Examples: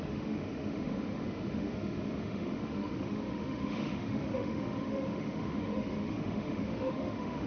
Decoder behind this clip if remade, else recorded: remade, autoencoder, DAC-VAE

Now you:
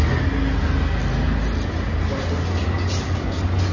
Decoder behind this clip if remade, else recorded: recorded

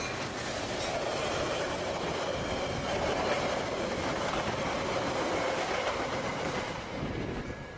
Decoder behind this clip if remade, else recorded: recorded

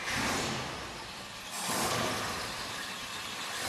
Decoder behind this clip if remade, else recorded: recorded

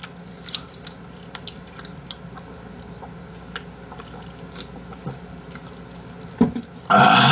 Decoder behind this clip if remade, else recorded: recorded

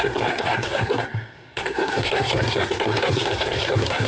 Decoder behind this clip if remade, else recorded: remade, codec, SNAC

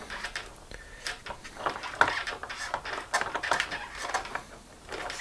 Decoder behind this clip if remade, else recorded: recorded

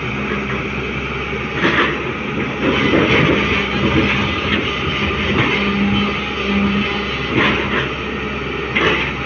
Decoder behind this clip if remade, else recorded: recorded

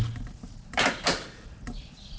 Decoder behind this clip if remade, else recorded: recorded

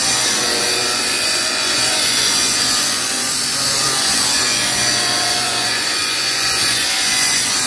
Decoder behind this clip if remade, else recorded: remade, vocoder, Vocos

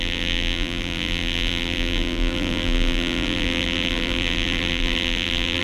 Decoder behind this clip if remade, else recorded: remade, vocoder, BigVGAN v2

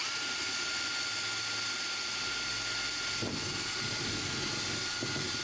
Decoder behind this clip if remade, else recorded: recorded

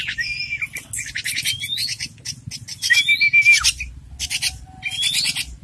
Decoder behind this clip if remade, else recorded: recorded